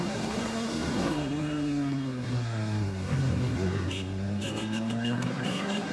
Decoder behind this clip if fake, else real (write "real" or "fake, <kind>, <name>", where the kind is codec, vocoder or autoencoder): fake, codec, SNAC